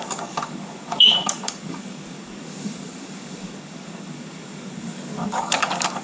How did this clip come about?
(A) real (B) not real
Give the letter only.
B